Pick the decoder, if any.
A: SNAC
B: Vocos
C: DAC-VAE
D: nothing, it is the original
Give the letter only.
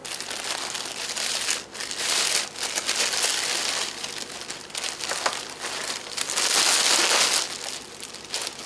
D